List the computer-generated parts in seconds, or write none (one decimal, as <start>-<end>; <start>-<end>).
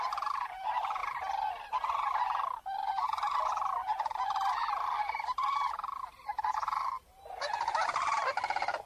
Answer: 1.0-1.5